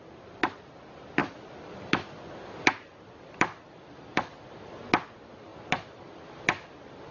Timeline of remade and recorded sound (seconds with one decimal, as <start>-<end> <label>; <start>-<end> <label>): 0.0-1.2 recorded; 1.2-4.7 remade; 4.7-5.5 recorded; 5.5-7.1 remade